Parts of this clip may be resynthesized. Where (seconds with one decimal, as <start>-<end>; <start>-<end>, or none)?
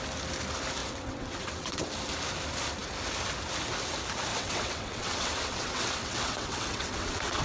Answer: 0.8-1.9; 4.3-7.4